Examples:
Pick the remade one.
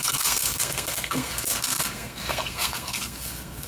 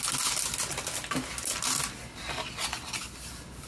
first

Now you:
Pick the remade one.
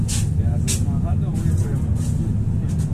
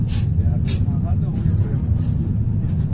second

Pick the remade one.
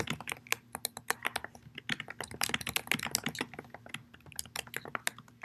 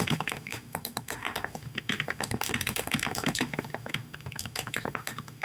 second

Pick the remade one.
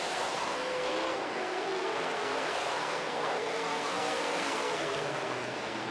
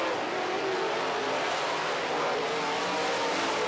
first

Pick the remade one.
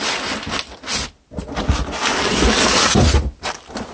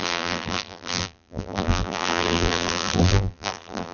second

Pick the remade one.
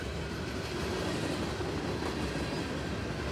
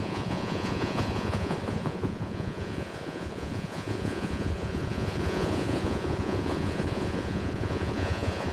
second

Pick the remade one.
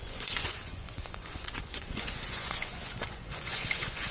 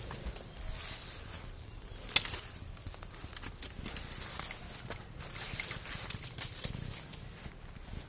first